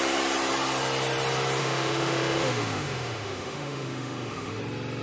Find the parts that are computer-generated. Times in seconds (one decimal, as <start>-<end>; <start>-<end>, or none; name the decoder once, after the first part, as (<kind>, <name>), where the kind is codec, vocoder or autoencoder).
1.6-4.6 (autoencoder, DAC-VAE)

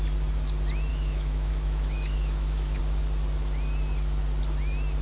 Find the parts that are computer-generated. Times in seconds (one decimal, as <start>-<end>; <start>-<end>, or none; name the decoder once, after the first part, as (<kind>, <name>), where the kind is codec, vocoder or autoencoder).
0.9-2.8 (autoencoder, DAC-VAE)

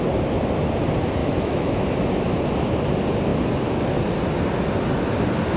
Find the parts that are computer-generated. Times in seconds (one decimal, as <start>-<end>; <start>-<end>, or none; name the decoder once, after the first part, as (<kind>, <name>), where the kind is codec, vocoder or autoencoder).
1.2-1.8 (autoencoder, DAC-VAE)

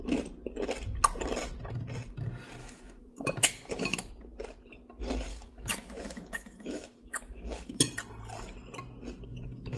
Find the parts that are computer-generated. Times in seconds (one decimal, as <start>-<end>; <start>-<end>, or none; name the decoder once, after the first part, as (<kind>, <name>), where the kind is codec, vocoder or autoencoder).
2.6-4.1 (autoencoder, DAC-VAE); 5.3-7.9; 9.3-9.8

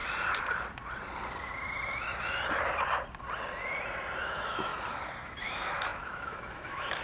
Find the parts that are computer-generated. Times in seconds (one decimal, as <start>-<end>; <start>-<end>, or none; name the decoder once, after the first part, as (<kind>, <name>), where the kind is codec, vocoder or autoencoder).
4.2-4.7 (autoencoder, DAC-VAE); 5.2-7.0